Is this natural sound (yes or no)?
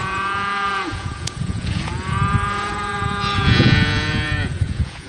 no